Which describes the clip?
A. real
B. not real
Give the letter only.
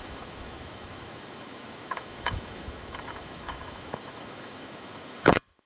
B